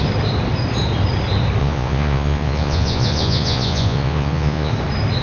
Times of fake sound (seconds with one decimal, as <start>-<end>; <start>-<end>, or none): 1.6-4.7